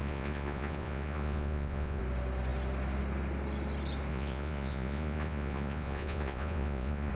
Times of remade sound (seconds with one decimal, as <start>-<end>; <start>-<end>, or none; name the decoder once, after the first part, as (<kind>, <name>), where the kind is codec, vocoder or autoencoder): 0.0-2.0 (vocoder, Vocos); 4.1-7.1

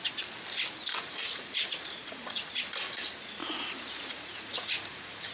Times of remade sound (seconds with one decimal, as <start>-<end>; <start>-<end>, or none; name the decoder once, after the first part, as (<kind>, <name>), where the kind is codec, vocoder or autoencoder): 0.9-2.6 (vocoder, Vocos); 3.4-5.3

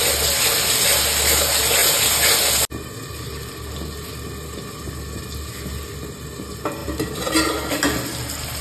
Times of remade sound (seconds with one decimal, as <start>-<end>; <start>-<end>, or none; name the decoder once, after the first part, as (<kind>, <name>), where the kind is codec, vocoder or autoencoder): none

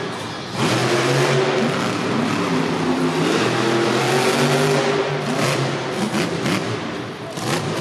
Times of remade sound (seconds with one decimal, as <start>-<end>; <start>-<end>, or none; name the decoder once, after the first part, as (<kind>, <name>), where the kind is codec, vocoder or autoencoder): none

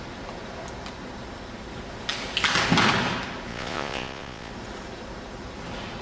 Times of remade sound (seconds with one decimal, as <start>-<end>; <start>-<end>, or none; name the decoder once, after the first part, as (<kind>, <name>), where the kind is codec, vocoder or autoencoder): 3.5-4.5 (vocoder, Vocos)